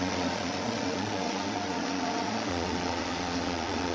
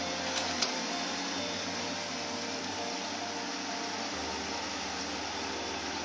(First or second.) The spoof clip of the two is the first